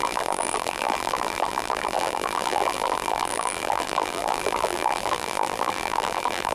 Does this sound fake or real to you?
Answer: fake